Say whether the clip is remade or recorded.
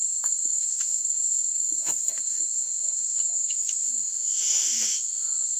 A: remade